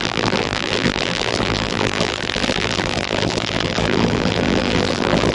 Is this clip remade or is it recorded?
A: remade